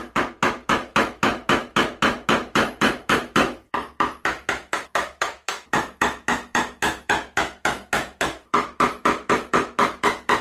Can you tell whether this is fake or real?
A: fake